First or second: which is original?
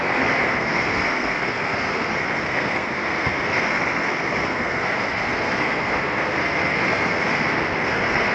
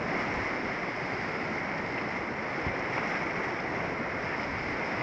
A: second